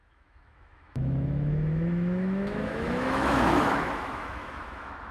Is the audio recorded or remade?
remade